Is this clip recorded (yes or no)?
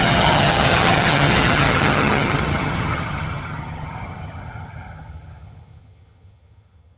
no